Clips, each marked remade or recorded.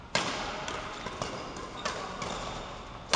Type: recorded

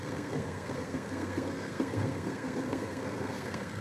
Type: remade